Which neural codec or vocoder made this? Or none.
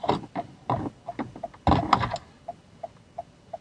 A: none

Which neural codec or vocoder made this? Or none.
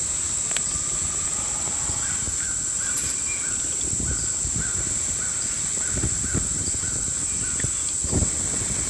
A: none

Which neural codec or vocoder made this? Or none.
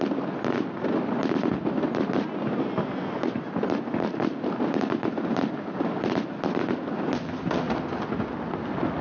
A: none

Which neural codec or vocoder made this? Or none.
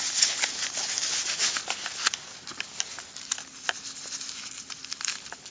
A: none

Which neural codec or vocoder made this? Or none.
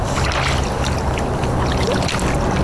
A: none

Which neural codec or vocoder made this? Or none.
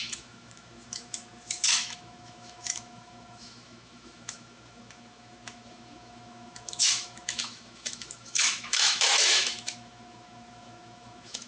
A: autoencoder, DAC-VAE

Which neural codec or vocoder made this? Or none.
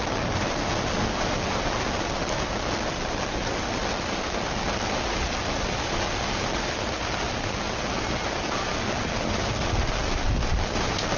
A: none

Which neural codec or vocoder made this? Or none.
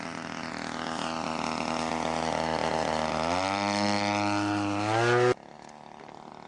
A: none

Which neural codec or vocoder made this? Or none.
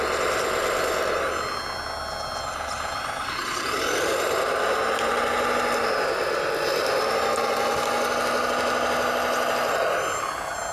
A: none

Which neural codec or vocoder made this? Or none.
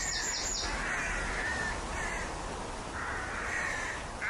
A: none